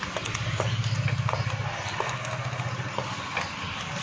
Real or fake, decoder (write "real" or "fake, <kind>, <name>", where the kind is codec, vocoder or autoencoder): real